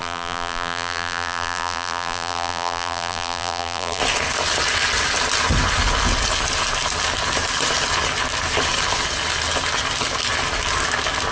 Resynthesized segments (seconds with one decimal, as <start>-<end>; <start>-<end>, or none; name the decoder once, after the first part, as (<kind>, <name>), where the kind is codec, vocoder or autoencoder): 0.0-4.0 (vocoder, BigVGAN v2)